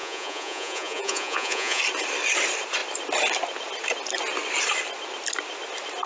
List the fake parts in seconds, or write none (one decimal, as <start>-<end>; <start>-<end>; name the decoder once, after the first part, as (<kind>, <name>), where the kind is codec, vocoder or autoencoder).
0.0-1.8 (vocoder, Vocos)